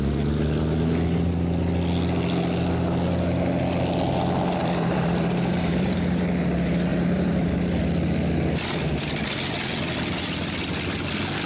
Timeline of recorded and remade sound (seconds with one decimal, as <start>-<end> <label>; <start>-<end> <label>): 0.0-4.6 recorded; 4.6-6.2 remade; 6.2-6.9 recorded; 6.9-7.8 remade; 7.8-11.5 recorded